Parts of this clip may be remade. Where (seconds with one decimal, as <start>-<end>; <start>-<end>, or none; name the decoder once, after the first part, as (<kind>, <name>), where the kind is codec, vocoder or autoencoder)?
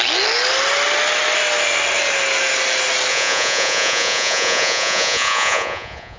3.1-6.2 (vocoder, Vocos)